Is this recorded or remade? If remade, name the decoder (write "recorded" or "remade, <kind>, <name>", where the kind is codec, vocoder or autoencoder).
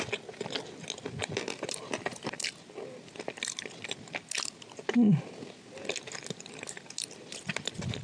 recorded